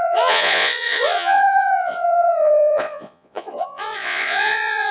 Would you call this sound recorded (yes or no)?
no